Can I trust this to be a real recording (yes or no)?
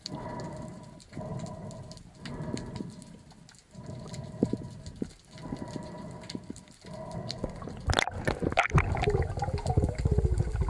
yes